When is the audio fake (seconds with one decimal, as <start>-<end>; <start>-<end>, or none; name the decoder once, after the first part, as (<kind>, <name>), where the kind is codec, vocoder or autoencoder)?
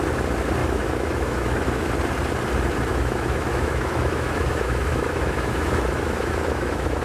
0.6-1.9 (autoencoder, DAC-VAE); 2.9-7.0